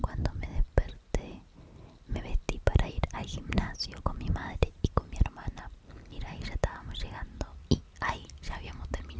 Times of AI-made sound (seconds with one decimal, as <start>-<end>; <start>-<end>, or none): 2.7-7.7

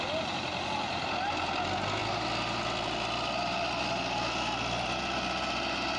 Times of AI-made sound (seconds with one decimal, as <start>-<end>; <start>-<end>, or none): 2.0-3.8